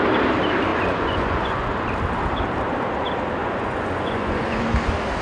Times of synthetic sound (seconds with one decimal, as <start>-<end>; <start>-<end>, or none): 0.7-1.7; 3.4-4.6

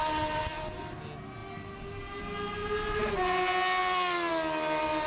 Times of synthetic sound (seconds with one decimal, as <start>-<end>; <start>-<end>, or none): none

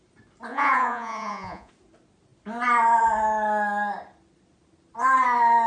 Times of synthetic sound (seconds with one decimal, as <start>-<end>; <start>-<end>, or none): 0.5-1.7

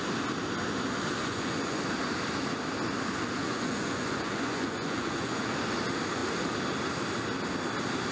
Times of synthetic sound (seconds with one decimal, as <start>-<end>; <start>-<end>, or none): 1.2-1.8; 3.4-5.5

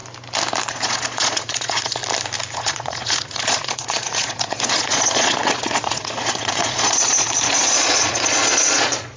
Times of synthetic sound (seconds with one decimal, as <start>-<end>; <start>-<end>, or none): 0.7-2.0; 2.5-9.2

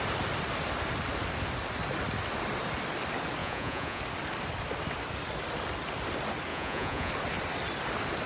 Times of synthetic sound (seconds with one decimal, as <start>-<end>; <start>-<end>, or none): 3.4-4.0; 6.5-7.1

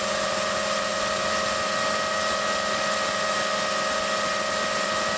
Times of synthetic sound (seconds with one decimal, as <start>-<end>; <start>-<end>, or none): none

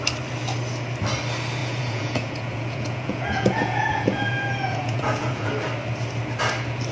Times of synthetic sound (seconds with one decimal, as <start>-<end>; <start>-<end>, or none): 1.6-5.5